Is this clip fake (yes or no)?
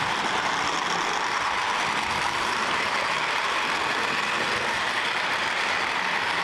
yes